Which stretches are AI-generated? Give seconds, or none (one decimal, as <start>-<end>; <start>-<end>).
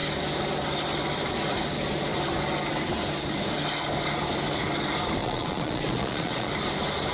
5.2-6.5